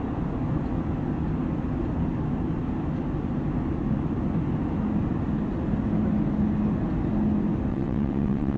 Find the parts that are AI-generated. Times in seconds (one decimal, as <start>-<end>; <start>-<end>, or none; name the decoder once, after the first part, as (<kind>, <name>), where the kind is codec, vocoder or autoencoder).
7.7-8.6 (vocoder, WaveNeXt)